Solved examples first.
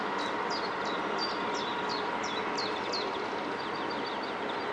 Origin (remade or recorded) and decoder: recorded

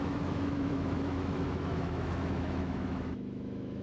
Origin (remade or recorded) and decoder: remade, autoencoder, DAC-VAE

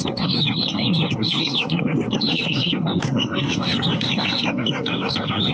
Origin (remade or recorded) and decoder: remade, codec, SNAC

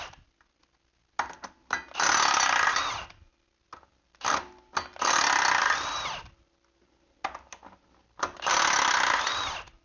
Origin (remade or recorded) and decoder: recorded